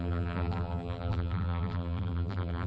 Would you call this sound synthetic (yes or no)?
yes